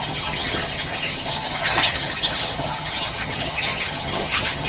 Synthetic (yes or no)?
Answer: yes